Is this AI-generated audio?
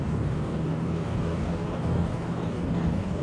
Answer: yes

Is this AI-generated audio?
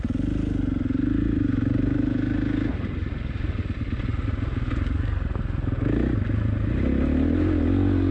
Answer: no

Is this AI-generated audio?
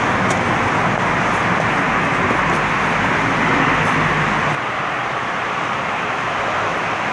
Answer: no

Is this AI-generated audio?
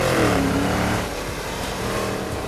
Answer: yes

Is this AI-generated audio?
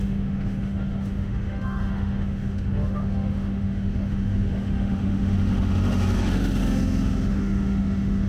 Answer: yes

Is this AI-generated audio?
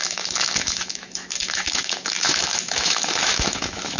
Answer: yes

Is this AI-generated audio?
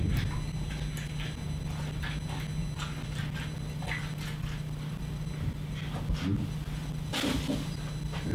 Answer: no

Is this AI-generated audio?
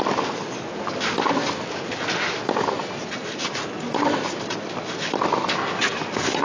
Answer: no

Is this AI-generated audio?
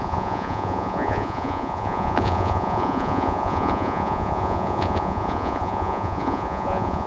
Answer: yes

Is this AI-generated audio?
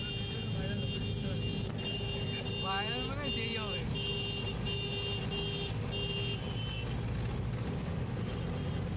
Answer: no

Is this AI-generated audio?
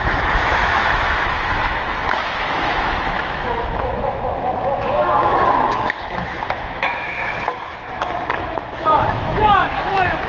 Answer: yes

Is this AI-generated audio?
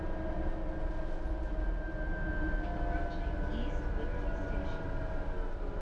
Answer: no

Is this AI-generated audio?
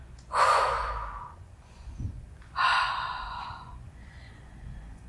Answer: yes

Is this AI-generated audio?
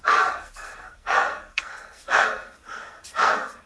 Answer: yes